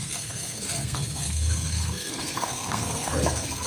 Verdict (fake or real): fake